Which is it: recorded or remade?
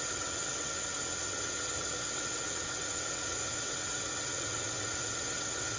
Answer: remade